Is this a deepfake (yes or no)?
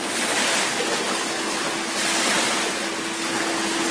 no